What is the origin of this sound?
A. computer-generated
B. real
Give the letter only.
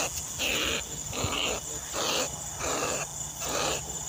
B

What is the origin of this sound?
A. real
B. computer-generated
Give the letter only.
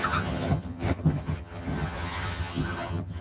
B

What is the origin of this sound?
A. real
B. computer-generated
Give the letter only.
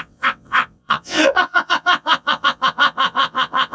B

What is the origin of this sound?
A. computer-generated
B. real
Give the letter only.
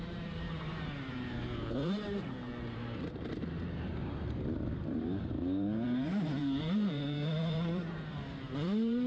A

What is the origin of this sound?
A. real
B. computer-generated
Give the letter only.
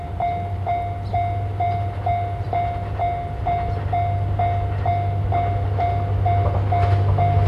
A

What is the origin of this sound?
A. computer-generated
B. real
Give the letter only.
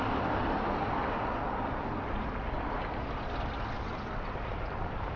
B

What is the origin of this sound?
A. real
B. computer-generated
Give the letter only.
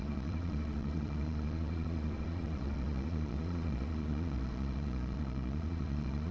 B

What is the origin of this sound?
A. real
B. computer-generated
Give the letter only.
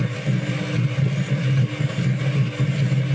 A